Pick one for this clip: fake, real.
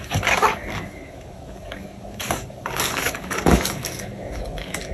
fake